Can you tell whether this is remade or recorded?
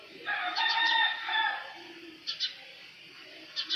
recorded